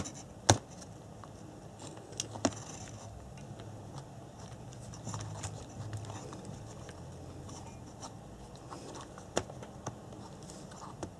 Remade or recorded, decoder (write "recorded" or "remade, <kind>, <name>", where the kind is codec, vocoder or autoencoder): recorded